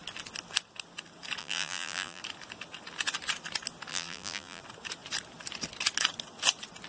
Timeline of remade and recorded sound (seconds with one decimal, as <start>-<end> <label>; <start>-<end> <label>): 0.0-1.4 recorded; 1.4-2.2 remade; 2.2-3.9 recorded; 3.9-4.6 remade; 4.6-6.9 recorded